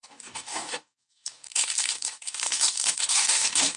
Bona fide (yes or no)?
no